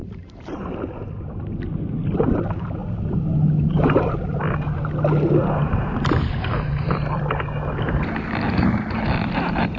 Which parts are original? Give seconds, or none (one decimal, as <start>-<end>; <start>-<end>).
0.8-2.8; 4.3-5.4; 6.9-9.8